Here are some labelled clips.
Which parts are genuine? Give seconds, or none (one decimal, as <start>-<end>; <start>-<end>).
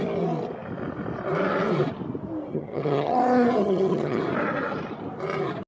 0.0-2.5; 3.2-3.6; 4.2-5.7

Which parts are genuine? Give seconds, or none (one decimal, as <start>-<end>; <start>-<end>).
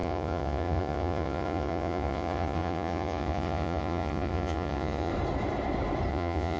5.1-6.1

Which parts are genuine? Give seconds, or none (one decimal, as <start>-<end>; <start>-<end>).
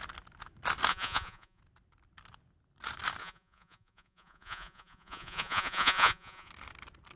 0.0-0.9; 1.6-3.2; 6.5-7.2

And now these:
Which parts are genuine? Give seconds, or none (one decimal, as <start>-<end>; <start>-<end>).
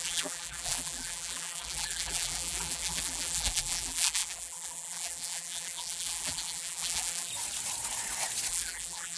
7.3-8.5